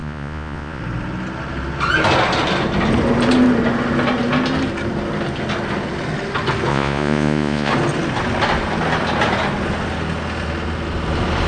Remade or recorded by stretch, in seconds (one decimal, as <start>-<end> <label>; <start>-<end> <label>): 0.0-0.8 remade; 0.8-6.7 recorded; 6.7-7.7 remade; 7.7-11.5 recorded